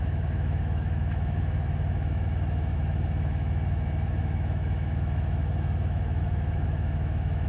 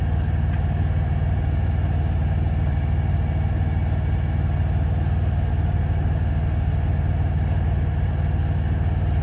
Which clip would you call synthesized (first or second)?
first